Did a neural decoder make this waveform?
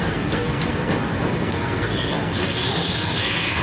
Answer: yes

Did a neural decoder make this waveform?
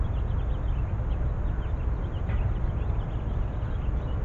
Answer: no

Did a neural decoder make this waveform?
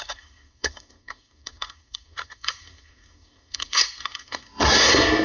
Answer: yes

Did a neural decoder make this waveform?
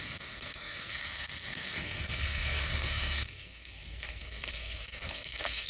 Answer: yes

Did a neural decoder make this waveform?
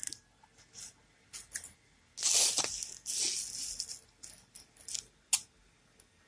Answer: no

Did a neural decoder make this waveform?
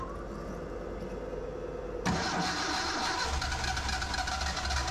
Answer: no